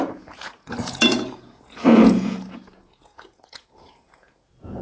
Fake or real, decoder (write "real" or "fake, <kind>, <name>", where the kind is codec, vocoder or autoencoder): fake, vocoder, Vocos